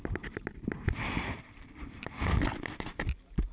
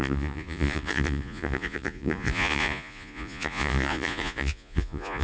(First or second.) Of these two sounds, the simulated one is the second